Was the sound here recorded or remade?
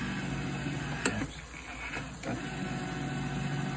recorded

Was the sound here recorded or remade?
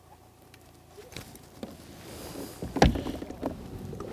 recorded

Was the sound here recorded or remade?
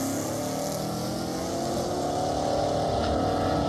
recorded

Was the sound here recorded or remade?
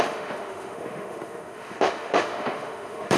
remade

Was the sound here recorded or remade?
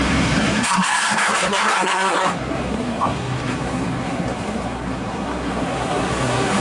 remade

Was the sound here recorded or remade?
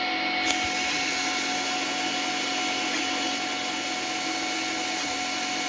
recorded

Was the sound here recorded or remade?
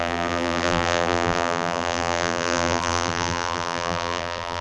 remade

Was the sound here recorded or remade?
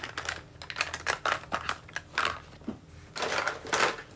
recorded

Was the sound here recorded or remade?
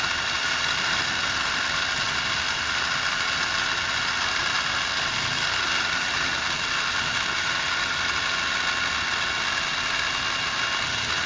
recorded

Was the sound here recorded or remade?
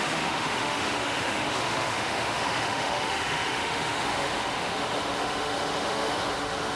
remade